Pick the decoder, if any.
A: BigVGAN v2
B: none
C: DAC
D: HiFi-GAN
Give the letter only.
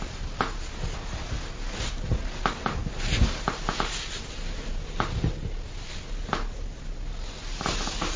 B